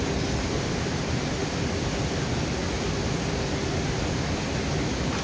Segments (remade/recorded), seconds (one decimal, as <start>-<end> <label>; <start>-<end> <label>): 0.0-5.2 recorded